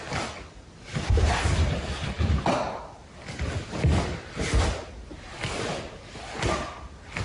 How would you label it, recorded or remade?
recorded